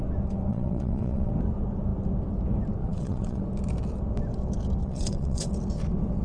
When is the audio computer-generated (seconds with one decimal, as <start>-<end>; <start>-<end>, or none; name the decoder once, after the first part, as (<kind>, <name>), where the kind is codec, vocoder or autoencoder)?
0.5-1.3 (vocoder, WaveNeXt); 2.8-3.4; 4.8-5.5